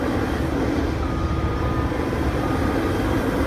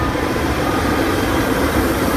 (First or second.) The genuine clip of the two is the first